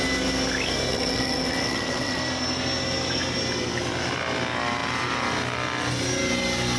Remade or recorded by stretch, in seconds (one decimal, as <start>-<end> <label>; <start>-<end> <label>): 0.0-0.9 recorded; 0.9-2.2 remade; 2.2-6.8 recorded